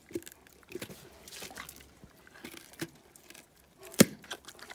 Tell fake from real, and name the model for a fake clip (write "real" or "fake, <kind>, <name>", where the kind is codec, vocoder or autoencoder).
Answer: real